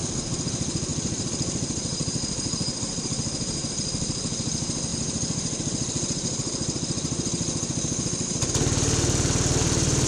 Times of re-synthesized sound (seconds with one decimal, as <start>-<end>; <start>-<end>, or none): 0.9-3.1